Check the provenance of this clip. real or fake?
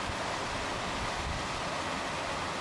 real